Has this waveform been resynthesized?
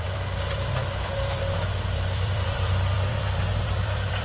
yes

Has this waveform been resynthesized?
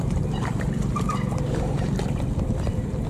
yes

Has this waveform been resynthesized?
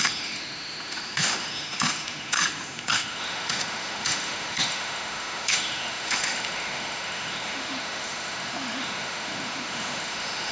yes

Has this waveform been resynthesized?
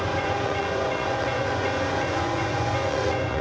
yes